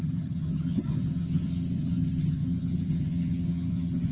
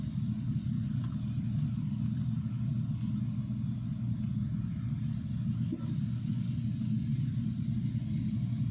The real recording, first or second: second